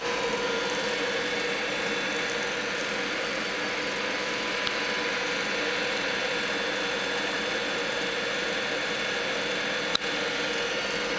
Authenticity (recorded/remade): recorded